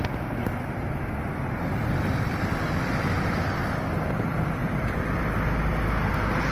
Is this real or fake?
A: real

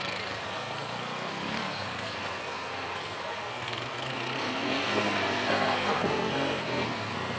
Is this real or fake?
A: fake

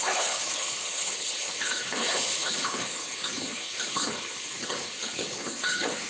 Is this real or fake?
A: fake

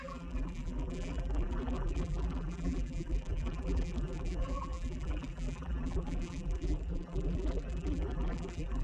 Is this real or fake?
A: fake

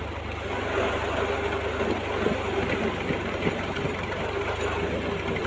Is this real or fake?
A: real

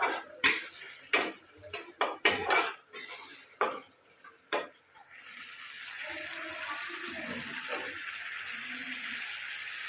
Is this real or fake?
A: fake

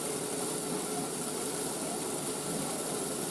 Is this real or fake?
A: real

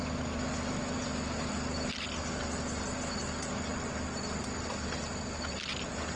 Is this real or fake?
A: real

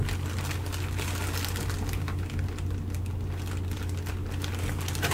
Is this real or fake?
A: real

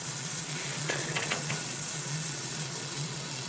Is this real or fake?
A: fake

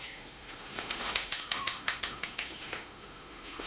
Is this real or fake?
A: fake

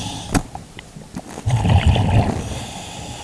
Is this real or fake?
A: real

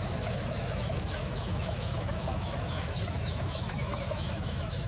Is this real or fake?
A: fake